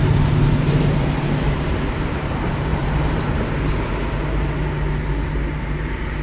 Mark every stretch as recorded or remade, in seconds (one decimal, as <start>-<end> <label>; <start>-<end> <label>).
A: 0.0-1.8 remade; 1.8-2.7 recorded; 2.7-3.2 remade; 3.2-6.2 recorded